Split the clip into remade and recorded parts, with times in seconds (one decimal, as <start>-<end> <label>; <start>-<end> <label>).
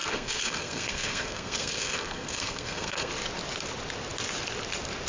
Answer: 0.0-3.1 remade; 3.1-5.1 recorded